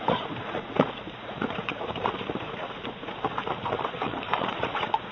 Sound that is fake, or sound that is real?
fake